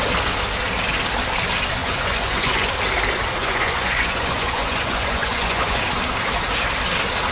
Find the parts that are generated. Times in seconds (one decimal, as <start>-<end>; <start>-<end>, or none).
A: 1.8-2.7; 3.4-5.8